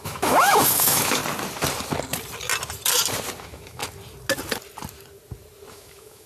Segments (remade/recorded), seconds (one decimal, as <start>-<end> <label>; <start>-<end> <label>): 0.0-1.2 remade; 1.2-3.4 recorded; 3.4-3.8 remade; 3.8-5.7 recorded; 5.7-6.3 remade